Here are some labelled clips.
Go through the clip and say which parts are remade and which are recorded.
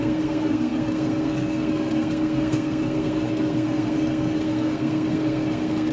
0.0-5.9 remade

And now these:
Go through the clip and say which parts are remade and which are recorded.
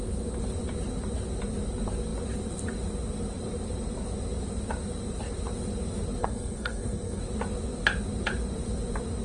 0.0-6.2 recorded; 6.2-7.2 remade; 7.2-9.2 recorded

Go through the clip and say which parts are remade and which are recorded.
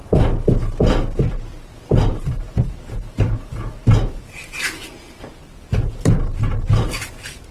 0.0-7.5 recorded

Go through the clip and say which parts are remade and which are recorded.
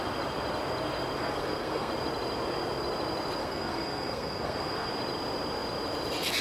0.0-1.2 recorded; 1.2-1.9 remade; 1.9-3.4 recorded; 3.4-4.9 remade; 4.9-6.4 recorded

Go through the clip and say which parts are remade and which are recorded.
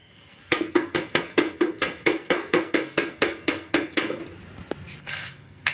0.0-4.2 remade; 4.2-5.0 recorded; 5.0-5.7 remade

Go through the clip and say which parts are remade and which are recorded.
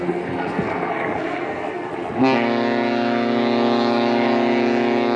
0.0-1.9 remade; 1.9-5.2 recorded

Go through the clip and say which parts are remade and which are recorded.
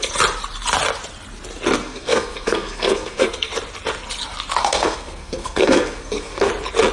0.0-1.8 recorded; 1.8-3.5 remade; 3.5-4.6 recorded; 4.6-6.5 remade; 6.5-6.9 recorded